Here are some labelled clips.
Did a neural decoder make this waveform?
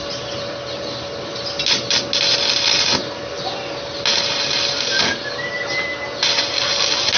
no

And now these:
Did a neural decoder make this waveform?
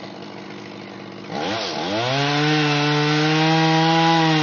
no